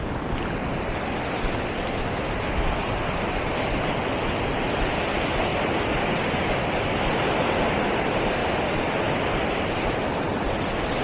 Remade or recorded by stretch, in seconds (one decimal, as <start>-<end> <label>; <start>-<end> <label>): 0.0-8.4 recorded; 8.4-9.9 remade; 9.9-11.0 recorded

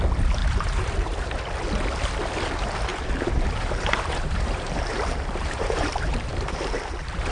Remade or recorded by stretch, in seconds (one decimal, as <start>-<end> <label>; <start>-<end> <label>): 0.0-0.4 recorded; 0.4-1.3 remade; 1.3-2.9 recorded; 2.9-7.3 remade

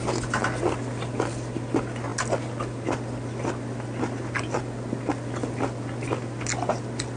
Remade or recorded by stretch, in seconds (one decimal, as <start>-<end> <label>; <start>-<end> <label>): 0.0-7.2 recorded

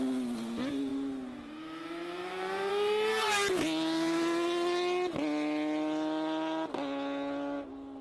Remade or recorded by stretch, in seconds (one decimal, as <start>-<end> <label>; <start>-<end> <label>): 0.0-0.9 recorded; 0.9-2.7 remade; 2.7-8.0 recorded

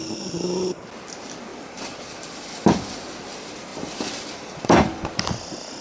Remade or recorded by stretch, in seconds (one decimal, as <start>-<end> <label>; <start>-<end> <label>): 0.0-1.5 recorded; 1.5-2.7 remade; 2.7-3.7 recorded; 3.7-4.9 remade; 4.9-5.8 recorded

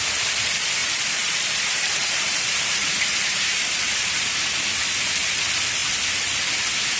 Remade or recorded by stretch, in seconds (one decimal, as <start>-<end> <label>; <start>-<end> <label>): 0.0-0.8 recorded; 0.8-4.4 remade; 4.4-7.0 recorded

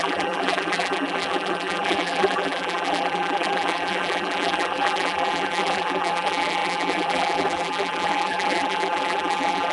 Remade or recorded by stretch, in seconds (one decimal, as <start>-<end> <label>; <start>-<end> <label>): 0.0-9.7 remade